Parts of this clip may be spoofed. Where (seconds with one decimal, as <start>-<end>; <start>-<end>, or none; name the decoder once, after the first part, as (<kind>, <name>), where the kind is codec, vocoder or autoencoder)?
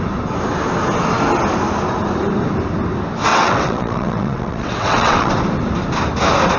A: 3.3-5.3 (vocoder, WaveNeXt)